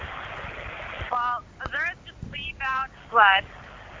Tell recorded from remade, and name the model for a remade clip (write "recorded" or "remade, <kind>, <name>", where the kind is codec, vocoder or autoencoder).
recorded